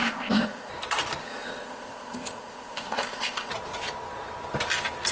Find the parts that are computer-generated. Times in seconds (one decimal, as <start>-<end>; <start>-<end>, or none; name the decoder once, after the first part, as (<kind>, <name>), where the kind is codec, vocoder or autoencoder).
0.0-0.7 (codec, ZipCodec); 1.2-3.5